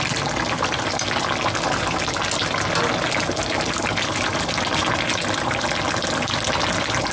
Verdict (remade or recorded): recorded